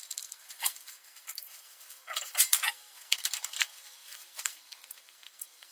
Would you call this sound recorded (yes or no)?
no